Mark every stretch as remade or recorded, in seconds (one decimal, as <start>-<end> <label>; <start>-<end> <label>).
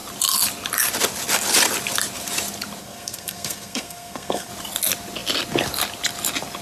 0.0-2.8 recorded; 2.8-4.5 remade; 4.5-6.6 recorded